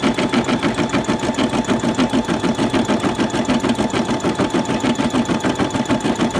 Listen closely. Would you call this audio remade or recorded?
recorded